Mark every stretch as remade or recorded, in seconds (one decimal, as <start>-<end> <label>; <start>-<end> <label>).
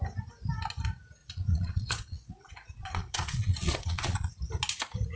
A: 0.0-1.2 recorded; 1.2-4.3 remade; 4.3-5.2 recorded